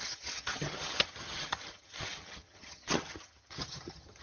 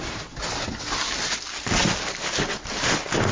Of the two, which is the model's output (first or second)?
first